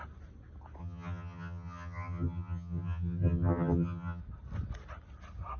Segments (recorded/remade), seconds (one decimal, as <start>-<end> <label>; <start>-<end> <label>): 0.0-0.8 recorded; 0.8-4.2 remade; 4.2-5.6 recorded

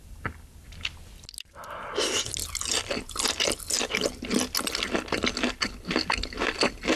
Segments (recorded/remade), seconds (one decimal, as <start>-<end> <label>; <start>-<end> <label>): 0.0-7.0 recorded

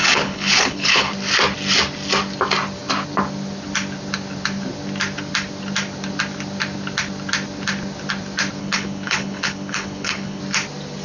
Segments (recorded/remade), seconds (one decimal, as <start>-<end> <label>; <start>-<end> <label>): 0.0-1.1 remade; 1.1-8.6 recorded; 8.6-10.4 remade; 10.4-11.0 recorded

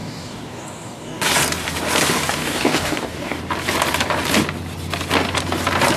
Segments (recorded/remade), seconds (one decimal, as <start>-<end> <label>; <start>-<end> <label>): 0.0-1.3 remade; 1.3-2.4 recorded; 2.4-3.4 remade; 3.4-6.0 recorded

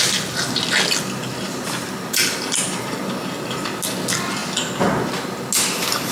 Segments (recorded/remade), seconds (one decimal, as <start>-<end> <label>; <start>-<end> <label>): 0.0-6.1 recorded

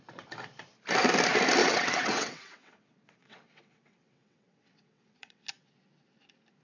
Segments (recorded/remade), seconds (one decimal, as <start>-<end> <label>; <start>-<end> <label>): 0.0-1.6 recorded; 1.6-5.4 remade; 5.4-6.6 recorded

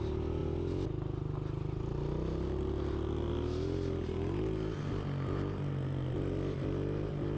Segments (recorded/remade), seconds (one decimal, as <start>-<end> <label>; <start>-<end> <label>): 0.0-7.4 recorded